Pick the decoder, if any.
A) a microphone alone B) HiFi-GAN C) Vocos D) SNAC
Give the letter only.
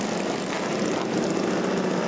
A